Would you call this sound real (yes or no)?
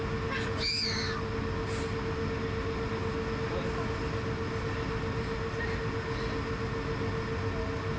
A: yes